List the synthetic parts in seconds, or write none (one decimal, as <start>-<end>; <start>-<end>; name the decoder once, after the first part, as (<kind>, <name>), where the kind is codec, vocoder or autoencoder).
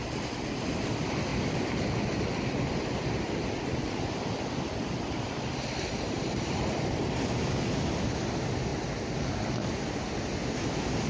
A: none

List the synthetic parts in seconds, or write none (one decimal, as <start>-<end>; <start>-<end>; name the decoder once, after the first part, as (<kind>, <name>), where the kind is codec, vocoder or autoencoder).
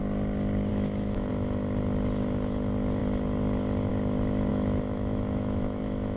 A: 0.7-1.3 (autoencoder, DAC-VAE); 4.5-6.2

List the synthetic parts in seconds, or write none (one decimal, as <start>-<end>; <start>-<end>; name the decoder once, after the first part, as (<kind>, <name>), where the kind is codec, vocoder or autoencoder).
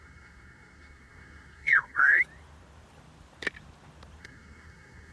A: 0.0-2.2 (codec, SNAC); 4.2-5.1